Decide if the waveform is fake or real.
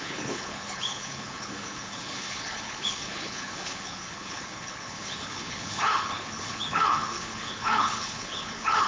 fake